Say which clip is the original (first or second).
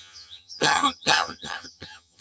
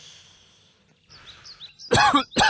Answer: second